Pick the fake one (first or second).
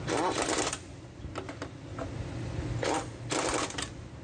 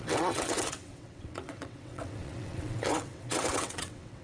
second